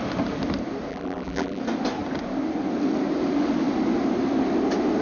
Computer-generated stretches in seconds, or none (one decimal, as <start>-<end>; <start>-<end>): 0.9-1.6